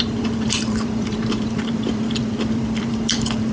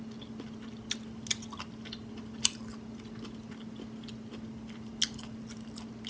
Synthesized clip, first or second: first